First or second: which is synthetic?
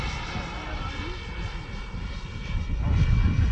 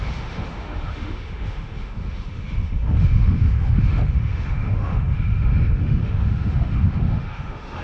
second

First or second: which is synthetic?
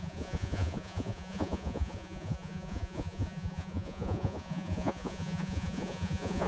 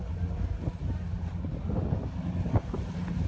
first